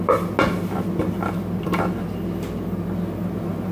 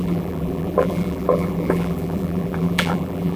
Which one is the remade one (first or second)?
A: second